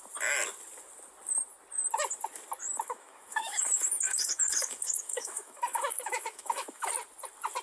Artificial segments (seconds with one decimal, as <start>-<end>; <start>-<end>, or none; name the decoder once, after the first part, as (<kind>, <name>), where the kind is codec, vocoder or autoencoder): 2.7-6.9 (autoencoder, DAC-VAE)